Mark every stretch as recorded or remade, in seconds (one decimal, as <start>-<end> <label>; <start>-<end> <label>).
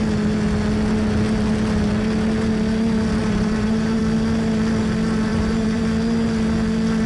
0.0-3.2 recorded; 3.2-4.0 remade; 4.0-5.3 recorded; 5.3-5.8 remade; 5.8-7.1 recorded